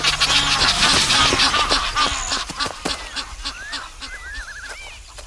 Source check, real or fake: real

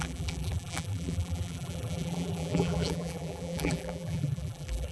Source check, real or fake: fake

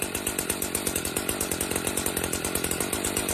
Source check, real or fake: fake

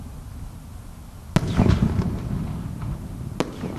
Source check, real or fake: real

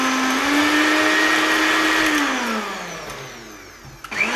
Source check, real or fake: real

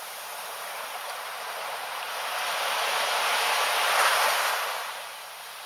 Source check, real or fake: fake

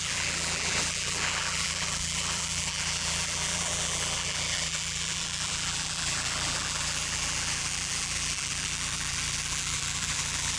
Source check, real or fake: fake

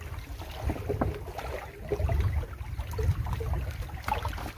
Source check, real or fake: real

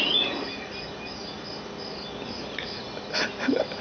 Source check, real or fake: real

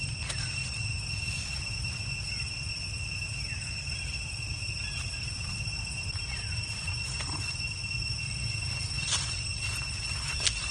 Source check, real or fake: fake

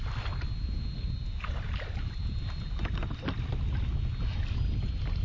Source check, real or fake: real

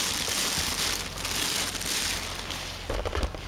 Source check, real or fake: real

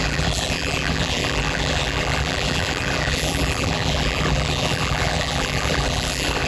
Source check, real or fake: fake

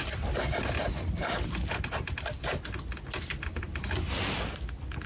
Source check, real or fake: real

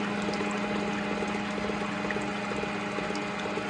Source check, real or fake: real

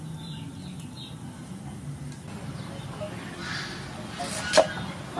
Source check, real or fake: real